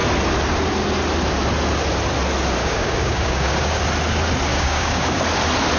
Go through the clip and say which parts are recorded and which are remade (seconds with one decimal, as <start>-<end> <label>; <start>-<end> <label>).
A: 0.0-2.6 recorded; 2.6-3.8 remade; 3.8-4.5 recorded; 4.5-5.2 remade; 5.2-5.8 recorded

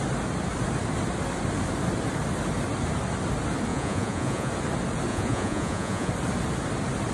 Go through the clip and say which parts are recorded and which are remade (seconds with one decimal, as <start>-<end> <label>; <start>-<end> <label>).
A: 0.0-3.7 recorded; 3.7-4.5 remade; 4.5-5.1 recorded; 5.1-6.1 remade; 6.1-7.1 recorded

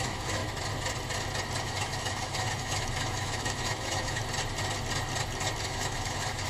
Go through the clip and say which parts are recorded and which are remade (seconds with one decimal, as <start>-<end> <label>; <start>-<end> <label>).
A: 0.0-0.4 remade; 0.4-1.6 recorded; 1.6-4.2 remade; 4.2-5.6 recorded; 5.6-6.5 remade